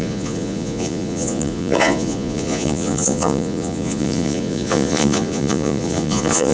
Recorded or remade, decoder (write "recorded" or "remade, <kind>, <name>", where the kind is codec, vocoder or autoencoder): remade, vocoder, Vocos